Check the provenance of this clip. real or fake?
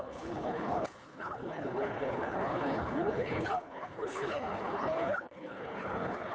fake